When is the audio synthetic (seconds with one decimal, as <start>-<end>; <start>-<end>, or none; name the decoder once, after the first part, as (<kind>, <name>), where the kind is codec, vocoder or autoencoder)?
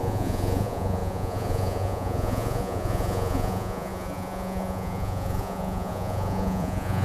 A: 0.0-7.0 (vocoder, Vocos)